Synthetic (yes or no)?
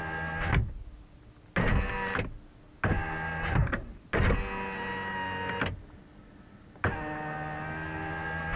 no